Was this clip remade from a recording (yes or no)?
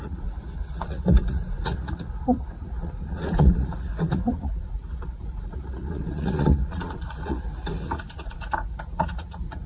yes